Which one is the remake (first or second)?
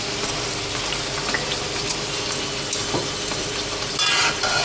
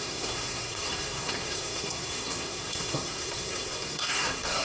second